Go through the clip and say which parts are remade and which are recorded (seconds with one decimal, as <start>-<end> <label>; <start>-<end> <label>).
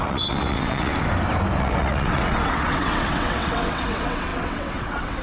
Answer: 0.0-0.9 remade; 0.9-1.6 recorded; 1.6-5.2 remade